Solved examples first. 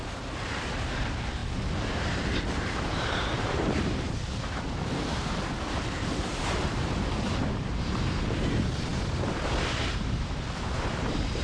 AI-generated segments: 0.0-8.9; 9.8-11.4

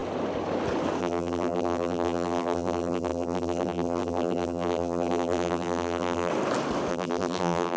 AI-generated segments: 1.0-6.3; 6.9-7.8